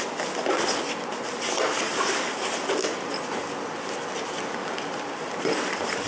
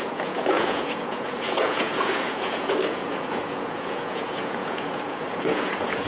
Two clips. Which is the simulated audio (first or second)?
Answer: second